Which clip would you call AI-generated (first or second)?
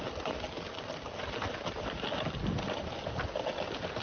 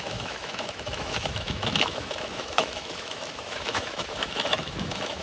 second